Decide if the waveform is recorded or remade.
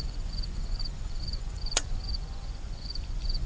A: remade